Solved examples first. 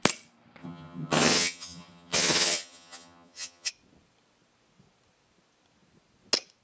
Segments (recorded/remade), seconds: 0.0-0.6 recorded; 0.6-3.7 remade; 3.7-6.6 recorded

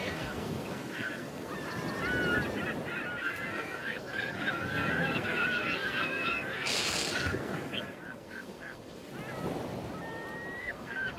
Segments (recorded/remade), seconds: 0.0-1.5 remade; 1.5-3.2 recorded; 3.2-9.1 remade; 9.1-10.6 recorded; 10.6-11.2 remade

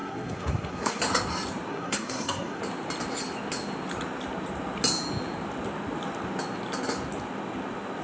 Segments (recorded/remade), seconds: 0.0-1.0 remade; 1.0-1.7 recorded; 1.7-2.6 remade; 2.6-8.0 recorded

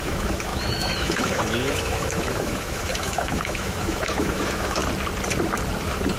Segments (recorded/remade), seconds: 0.0-4.8 remade; 4.8-6.2 recorded